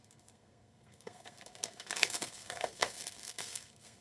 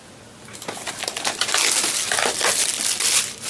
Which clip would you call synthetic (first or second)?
first